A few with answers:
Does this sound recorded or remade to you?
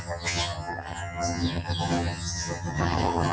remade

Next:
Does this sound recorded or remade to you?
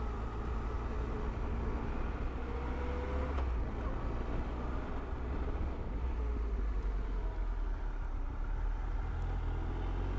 recorded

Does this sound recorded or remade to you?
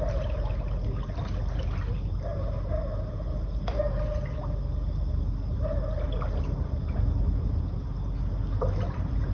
recorded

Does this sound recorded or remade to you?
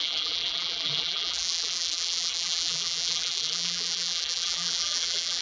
remade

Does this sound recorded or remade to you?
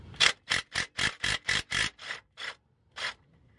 recorded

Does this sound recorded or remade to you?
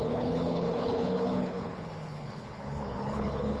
remade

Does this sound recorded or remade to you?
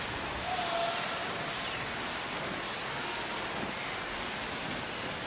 recorded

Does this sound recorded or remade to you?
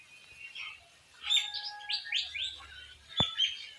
recorded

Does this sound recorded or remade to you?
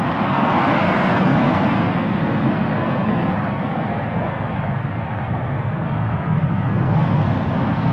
remade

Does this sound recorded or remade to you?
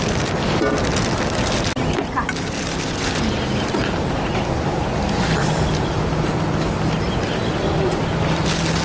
recorded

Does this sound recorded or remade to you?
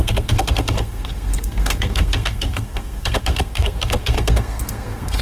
remade